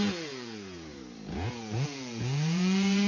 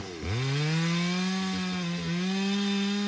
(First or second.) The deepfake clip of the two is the first